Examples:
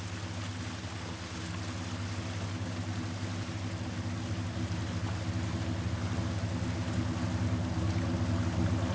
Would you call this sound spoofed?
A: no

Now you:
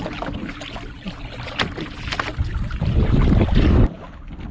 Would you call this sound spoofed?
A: no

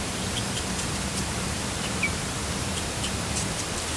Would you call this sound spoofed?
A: yes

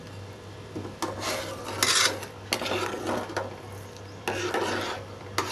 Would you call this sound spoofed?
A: no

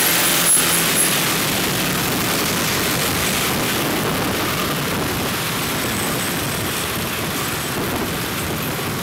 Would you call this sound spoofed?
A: no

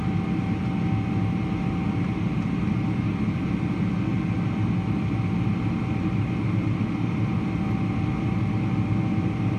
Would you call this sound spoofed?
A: no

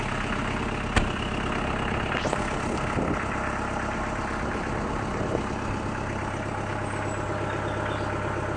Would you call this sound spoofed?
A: no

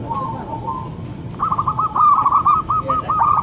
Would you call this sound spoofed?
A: no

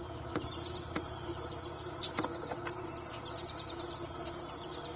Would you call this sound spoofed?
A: no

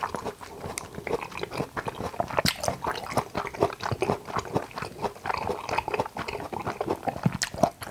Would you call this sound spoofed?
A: no